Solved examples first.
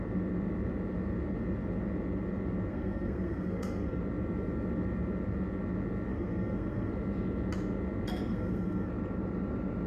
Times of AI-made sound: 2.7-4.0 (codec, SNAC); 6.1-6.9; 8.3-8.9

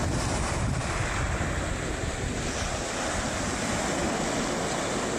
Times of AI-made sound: 0.0-0.6 (vocoder, BigVGAN v2)